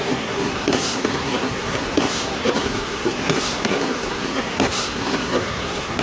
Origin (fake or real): fake